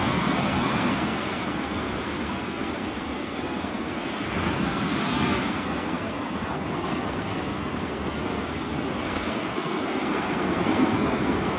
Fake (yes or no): yes